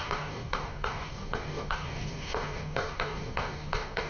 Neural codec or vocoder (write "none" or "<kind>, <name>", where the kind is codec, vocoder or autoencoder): codec, DAC